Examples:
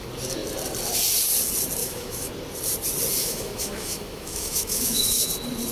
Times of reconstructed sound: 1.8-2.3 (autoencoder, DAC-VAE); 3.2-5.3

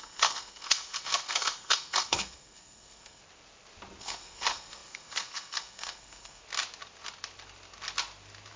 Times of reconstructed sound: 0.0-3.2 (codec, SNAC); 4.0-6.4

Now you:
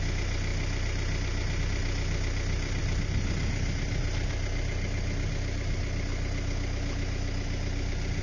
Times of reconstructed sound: none

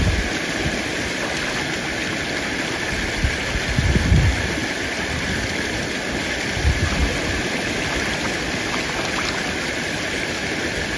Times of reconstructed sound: none